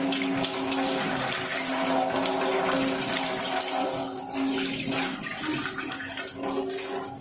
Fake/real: real